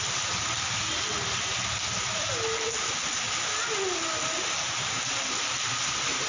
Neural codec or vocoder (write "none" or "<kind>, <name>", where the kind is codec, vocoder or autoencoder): none